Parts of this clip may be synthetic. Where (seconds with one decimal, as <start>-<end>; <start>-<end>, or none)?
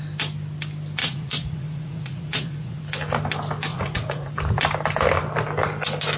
1.0-2.8; 3.7-4.3